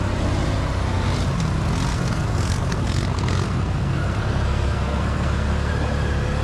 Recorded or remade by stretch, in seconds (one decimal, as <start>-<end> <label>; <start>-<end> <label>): 0.0-1.9 recorded; 1.9-5.7 remade; 5.7-6.4 recorded